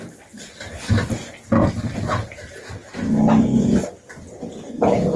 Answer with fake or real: real